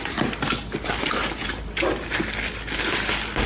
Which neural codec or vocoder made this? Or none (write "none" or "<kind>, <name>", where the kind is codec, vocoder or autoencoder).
none